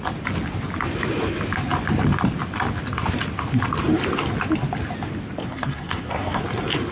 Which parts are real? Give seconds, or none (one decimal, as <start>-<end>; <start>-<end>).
0.0-5.4; 6.4-6.9